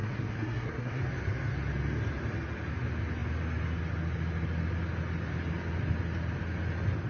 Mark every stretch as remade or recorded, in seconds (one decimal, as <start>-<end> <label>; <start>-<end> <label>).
0.0-1.0 remade; 1.0-7.1 recorded